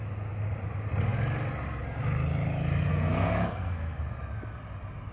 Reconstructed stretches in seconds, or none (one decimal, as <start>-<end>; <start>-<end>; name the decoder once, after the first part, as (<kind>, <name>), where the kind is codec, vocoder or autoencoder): 2.9-4.0 (codec, SNAC)